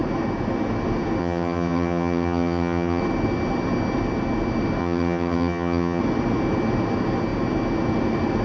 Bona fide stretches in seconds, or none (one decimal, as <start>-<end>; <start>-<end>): 0.0-1.2; 3.0-4.8; 6.0-8.4